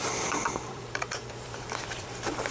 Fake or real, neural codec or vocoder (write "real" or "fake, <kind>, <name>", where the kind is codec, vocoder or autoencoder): fake, vocoder, BigVGAN v2